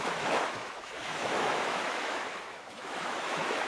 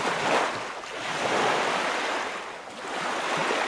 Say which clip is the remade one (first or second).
first